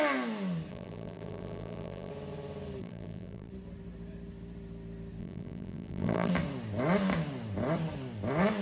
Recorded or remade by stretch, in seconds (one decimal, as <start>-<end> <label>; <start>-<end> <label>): 0.0-0.7 recorded; 0.7-2.1 remade; 2.1-2.8 recorded; 2.8-3.5 remade; 3.5-5.2 recorded; 5.2-6.3 remade; 6.3-8.6 recorded